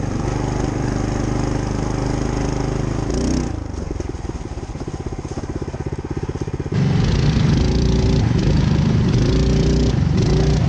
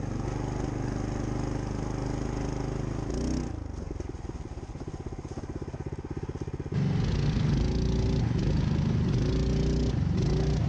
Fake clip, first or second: first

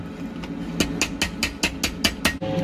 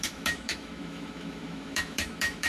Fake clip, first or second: second